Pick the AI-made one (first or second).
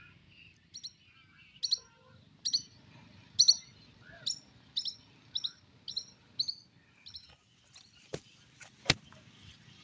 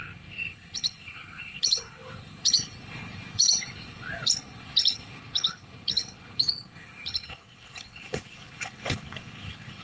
second